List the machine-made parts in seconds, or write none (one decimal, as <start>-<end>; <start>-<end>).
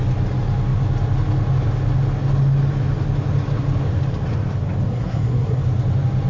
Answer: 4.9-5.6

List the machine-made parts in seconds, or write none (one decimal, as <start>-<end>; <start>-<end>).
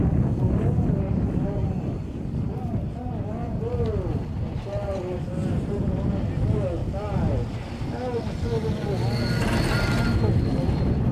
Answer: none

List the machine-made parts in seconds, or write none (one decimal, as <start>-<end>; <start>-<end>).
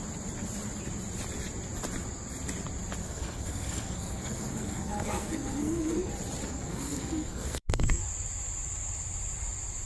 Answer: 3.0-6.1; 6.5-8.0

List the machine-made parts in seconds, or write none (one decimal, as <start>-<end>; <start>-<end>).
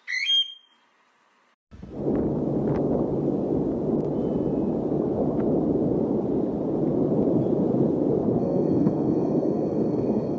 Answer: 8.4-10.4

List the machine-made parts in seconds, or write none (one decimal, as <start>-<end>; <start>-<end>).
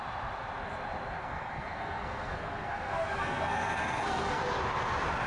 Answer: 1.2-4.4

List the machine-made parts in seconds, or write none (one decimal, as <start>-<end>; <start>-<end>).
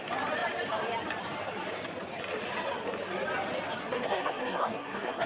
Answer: 3.8-5.3